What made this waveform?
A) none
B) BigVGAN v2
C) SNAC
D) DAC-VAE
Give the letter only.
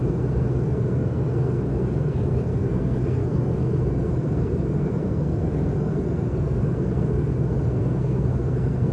C